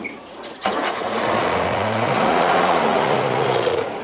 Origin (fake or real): fake